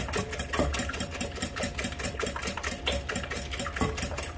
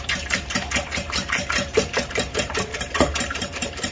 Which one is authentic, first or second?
first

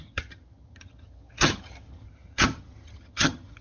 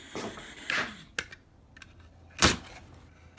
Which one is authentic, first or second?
second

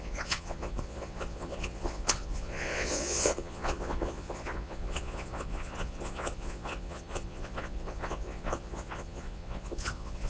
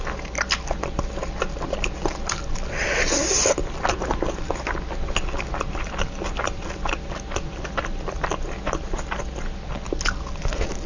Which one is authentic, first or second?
second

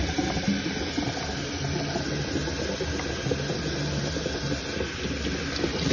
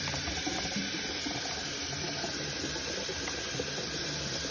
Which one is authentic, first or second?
first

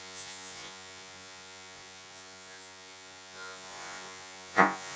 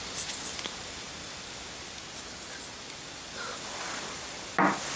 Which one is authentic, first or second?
second